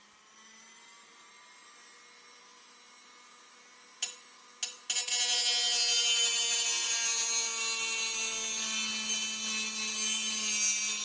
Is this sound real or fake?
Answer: real